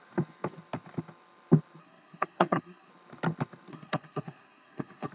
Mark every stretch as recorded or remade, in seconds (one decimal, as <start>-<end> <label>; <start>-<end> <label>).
0.0-1.8 recorded; 1.8-2.9 remade; 2.9-3.7 recorded; 3.7-5.1 remade